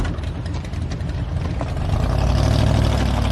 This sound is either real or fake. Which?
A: real